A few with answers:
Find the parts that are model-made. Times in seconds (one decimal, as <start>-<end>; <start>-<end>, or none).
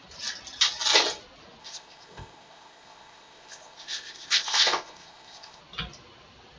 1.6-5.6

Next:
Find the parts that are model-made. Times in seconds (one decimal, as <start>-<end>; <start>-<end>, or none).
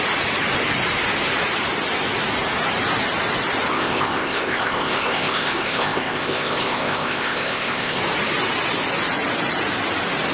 3.7-8.0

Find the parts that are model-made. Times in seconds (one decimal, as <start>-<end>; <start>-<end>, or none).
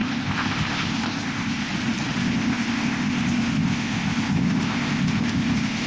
0.0-1.7; 2.2-5.9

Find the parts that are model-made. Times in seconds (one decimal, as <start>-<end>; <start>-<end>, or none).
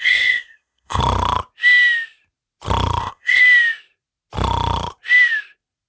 0.0-1.0; 3.0-3.4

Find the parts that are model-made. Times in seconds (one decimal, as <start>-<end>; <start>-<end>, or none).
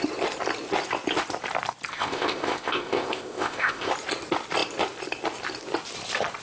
1.9-3.9